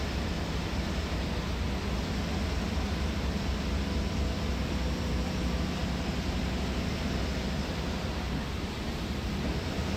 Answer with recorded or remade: recorded